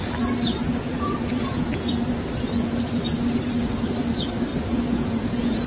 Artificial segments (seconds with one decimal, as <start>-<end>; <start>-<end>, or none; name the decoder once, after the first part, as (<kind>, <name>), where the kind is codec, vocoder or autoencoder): 0.7-2.0 (vocoder, Vocos); 4.5-5.7